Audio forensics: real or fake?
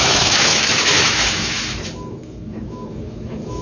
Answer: fake